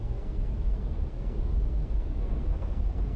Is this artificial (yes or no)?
yes